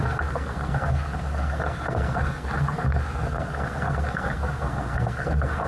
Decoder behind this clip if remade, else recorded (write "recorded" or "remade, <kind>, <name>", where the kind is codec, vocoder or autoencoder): remade, codec, SNAC